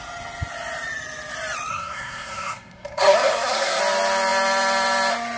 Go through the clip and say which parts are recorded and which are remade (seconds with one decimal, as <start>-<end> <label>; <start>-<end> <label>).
0.0-1.7 recorded; 1.7-3.8 remade; 3.8-5.4 recorded